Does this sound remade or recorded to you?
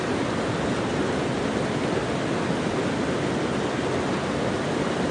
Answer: recorded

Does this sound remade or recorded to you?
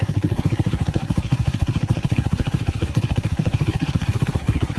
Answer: remade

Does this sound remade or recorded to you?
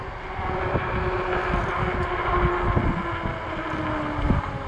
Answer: recorded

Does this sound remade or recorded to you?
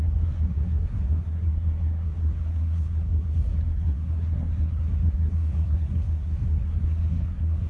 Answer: remade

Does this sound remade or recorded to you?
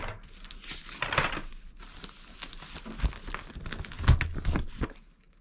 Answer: recorded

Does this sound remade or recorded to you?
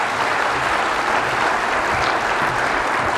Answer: recorded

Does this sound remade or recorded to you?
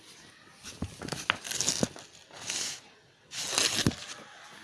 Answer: recorded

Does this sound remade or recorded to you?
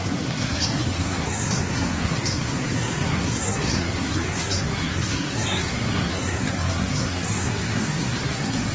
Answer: remade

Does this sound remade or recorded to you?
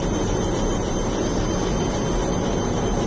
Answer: recorded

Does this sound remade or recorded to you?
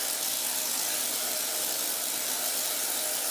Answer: recorded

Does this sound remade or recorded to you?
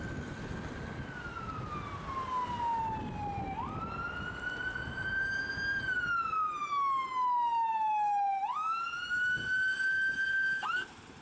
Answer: recorded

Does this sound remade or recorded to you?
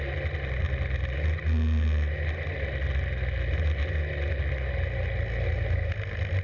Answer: recorded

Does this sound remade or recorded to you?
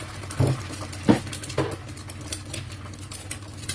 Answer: recorded